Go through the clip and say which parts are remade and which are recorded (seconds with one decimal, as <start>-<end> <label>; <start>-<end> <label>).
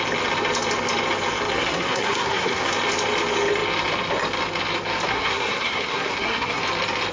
0.0-1.5 recorded; 1.5-2.7 remade; 2.7-5.1 recorded; 5.1-6.6 remade; 6.6-7.1 recorded